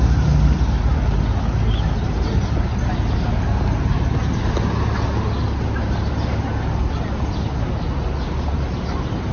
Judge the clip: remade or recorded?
recorded